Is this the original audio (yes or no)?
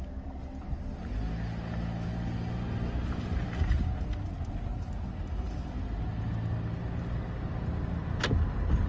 yes